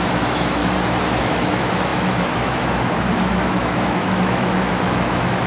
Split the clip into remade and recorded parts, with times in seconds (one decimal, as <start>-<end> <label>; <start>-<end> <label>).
0.0-0.6 remade; 0.6-1.2 recorded; 1.2-5.5 remade